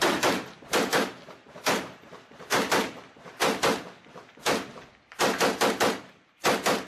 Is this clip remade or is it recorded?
recorded